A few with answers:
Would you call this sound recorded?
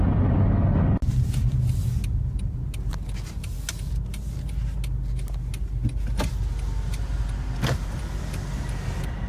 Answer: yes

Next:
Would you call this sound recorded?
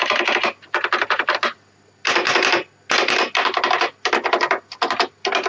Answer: yes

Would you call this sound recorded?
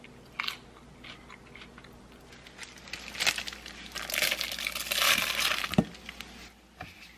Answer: yes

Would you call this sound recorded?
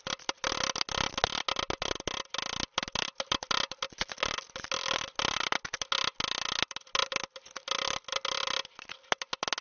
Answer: yes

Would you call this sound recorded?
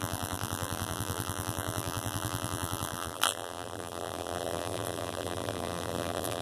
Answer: no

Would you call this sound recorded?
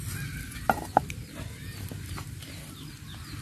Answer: yes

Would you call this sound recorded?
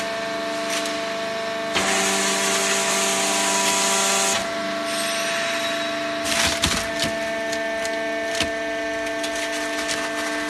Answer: yes